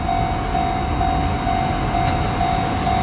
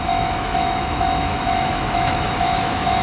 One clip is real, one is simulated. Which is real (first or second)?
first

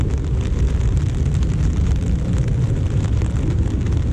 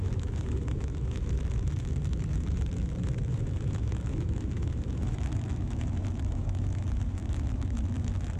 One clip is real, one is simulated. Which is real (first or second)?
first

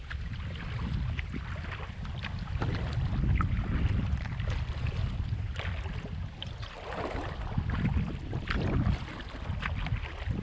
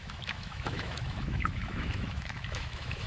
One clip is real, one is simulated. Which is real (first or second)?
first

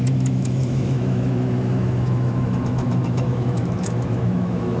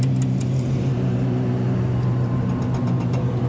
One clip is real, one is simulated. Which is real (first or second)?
second